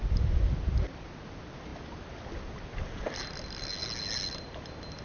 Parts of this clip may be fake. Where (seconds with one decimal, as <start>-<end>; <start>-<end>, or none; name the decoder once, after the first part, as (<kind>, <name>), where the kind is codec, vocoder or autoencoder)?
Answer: none